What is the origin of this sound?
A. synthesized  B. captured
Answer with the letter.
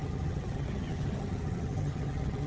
A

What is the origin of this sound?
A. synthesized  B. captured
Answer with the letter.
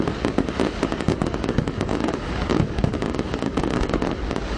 A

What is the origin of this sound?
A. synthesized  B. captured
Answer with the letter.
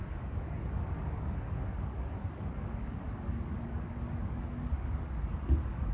A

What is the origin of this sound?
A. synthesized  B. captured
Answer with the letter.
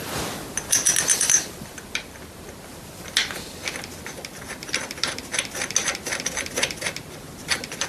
B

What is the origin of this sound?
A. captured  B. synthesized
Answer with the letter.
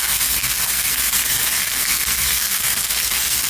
B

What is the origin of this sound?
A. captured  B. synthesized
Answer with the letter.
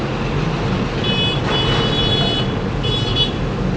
A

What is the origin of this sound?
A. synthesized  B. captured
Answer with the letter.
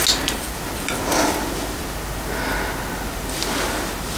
B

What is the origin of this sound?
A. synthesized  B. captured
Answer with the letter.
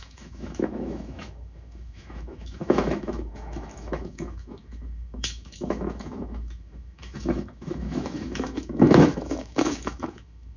A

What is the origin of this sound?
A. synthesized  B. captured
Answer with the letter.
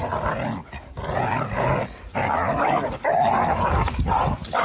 B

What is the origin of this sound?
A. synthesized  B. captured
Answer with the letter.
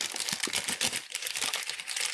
B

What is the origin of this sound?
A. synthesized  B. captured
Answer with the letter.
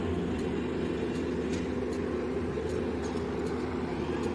B